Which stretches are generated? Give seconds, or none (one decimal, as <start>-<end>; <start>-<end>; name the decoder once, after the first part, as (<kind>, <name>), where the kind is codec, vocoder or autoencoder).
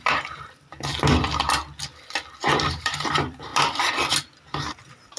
0.0-0.9 (vocoder, BigVGAN v2); 2.7-3.5; 4.4-5.2